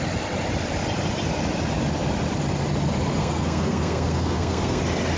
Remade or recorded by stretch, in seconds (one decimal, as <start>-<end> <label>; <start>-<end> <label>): 0.0-3.2 recorded; 3.2-4.8 remade; 4.8-5.2 recorded